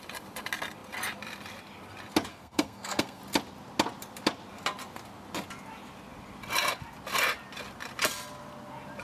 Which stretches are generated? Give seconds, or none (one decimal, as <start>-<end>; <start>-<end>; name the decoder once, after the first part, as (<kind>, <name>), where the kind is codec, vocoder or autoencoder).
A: 2.3-3.2 (codec, SNAC)